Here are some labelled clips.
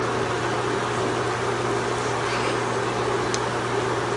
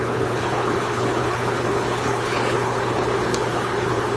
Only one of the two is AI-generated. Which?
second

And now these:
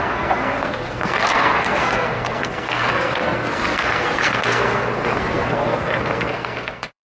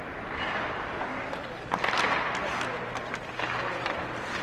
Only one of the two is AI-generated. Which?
first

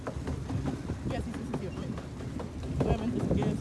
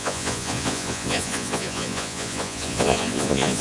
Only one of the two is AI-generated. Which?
second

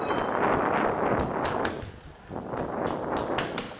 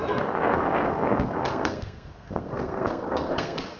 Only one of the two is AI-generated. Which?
second